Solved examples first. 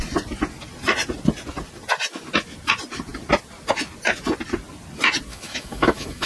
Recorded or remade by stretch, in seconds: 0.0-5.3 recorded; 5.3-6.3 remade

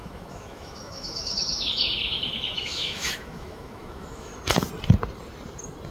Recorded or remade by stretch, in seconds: 0.0-4.3 remade; 4.3-5.9 recorded

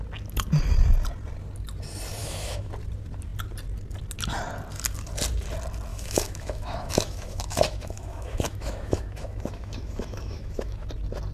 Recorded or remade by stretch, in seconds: 0.0-2.2 recorded; 2.2-2.7 remade; 2.7-5.9 recorded; 5.9-10.9 remade; 10.9-11.3 recorded

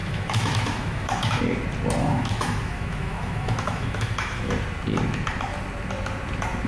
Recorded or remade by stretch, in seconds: 0.0-1.4 remade; 1.4-2.0 recorded; 2.0-4.5 remade; 4.5-6.7 recorded

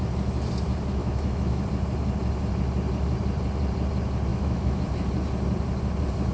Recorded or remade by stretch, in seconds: 0.0-1.0 recorded; 1.0-1.6 remade; 1.6-4.3 recorded; 4.3-4.8 remade; 4.8-6.3 recorded

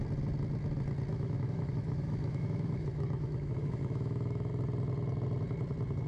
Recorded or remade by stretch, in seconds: 0.0-1.1 recorded; 1.1-4.5 remade; 4.5-6.1 recorded

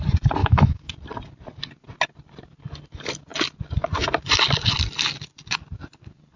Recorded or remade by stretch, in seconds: 0.0-0.4 recorded; 0.4-0.9 remade; 0.9-6.4 recorded